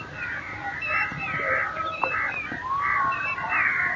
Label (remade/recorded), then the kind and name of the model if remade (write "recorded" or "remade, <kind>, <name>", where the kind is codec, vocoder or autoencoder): recorded